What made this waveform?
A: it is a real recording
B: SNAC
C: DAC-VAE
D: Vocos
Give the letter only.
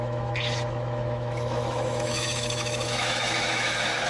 C